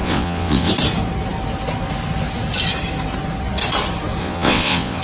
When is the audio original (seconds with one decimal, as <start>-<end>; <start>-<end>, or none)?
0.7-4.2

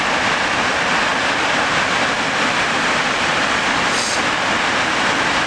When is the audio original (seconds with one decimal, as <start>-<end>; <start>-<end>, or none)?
0.0-5.5

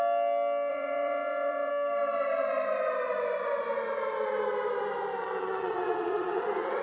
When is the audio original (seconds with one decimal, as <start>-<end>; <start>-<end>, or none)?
0.0-0.7; 1.7-5.2

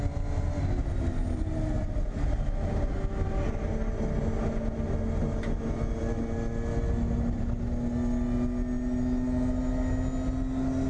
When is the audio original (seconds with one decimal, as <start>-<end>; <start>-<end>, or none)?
0.0-10.9

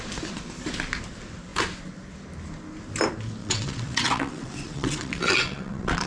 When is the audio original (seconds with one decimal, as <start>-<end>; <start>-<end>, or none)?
0.0-3.4

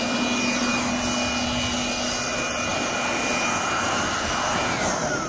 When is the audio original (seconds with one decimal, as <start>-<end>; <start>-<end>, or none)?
0.0-5.3